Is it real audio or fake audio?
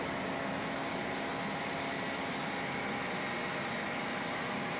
real